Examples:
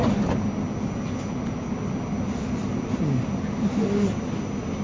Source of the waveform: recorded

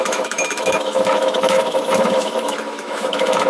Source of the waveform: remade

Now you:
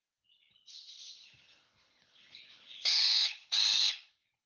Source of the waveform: remade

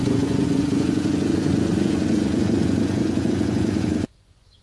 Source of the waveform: remade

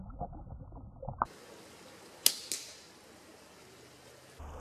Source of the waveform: recorded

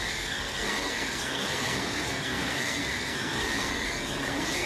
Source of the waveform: remade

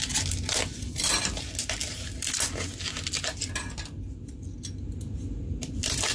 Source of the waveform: recorded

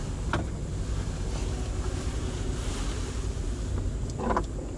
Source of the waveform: recorded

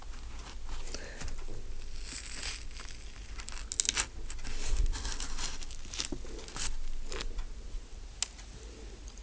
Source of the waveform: recorded